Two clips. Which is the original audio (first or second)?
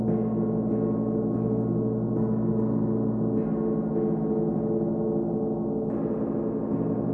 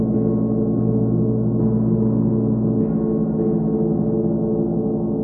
first